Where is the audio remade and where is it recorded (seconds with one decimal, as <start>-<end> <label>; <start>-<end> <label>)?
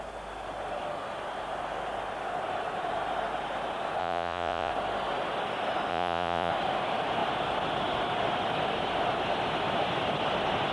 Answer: 0.0-4.0 recorded; 4.0-4.7 remade; 4.7-5.9 recorded; 5.9-6.5 remade; 6.5-10.7 recorded